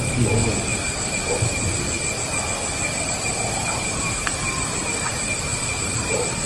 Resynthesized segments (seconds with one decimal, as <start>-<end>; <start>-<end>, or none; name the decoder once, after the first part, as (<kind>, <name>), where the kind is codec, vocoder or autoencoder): none